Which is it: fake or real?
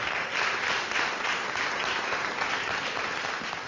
real